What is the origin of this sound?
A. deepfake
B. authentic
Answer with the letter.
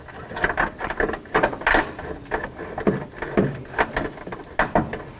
B